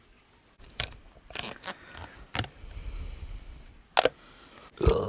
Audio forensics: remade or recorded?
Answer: recorded